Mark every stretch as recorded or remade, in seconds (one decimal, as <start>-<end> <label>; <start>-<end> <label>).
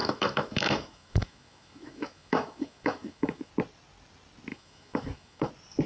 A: 0.0-3.5 remade; 3.5-4.5 recorded; 4.5-5.5 remade; 5.5-5.9 recorded